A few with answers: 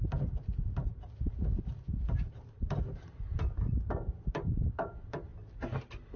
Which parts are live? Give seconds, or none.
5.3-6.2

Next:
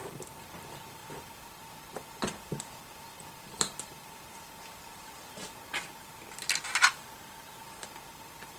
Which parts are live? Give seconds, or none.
5.4-6.9

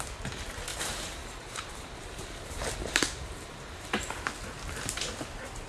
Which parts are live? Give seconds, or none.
0.0-0.7; 4.1-5.7

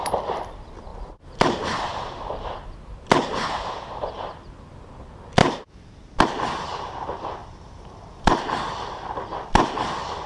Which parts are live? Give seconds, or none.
0.0-0.9; 2.3-7.4; 8.6-10.3